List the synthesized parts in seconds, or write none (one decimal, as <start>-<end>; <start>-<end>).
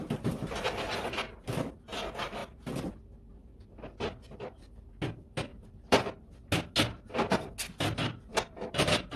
5.5-6.3; 8.3-9.2